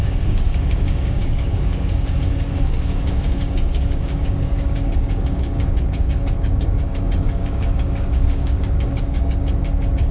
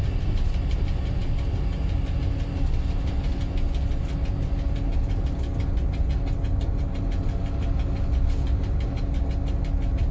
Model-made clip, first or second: first